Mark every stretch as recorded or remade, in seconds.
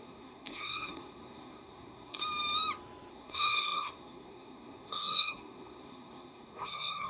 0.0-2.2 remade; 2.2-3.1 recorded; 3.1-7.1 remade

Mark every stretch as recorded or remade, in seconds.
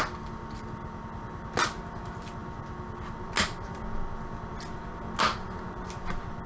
0.0-6.5 recorded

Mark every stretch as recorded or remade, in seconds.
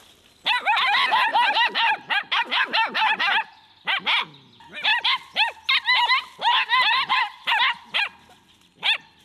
0.0-9.2 recorded